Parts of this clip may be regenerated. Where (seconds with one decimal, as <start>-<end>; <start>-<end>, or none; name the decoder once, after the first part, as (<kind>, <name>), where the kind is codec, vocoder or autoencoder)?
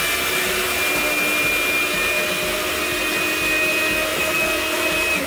none